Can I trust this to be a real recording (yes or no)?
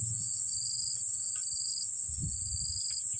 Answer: yes